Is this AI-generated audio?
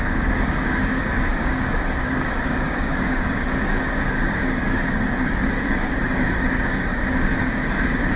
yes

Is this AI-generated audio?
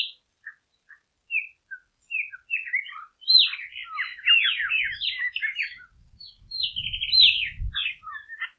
no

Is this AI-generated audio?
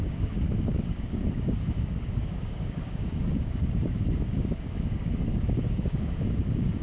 yes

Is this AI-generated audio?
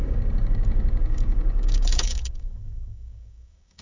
yes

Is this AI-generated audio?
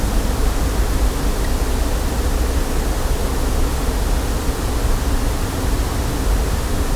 no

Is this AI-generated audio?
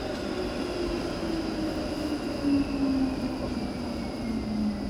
no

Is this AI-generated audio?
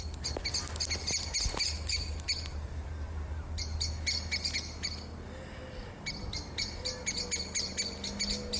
no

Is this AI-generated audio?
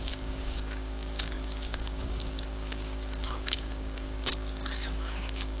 yes